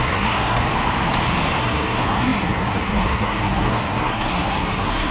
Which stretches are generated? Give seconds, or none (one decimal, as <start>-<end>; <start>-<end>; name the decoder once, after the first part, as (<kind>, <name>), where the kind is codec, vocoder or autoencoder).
0.0-0.6 (codec, SNAC); 1.6-5.1